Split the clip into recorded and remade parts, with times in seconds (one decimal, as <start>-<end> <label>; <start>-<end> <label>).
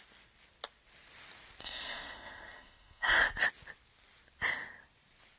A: 0.0-1.6 recorded; 1.6-3.1 remade; 3.1-5.4 recorded